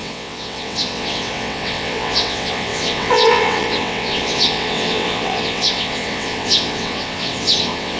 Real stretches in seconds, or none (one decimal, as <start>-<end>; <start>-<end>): none